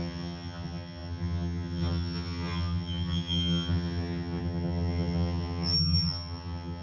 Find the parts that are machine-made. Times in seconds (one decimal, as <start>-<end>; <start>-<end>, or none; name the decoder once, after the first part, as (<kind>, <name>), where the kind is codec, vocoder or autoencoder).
0.0-6.8 (vocoder, HiFi-GAN)